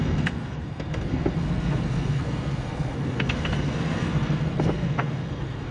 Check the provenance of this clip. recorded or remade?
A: remade